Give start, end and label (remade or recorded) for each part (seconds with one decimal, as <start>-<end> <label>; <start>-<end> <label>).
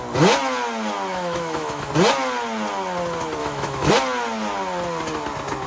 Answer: 0.0-1.1 recorded; 1.1-1.9 remade; 1.9-3.4 recorded; 3.4-3.9 remade; 3.9-5.7 recorded